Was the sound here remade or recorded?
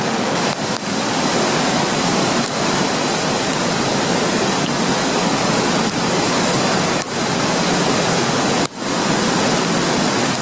recorded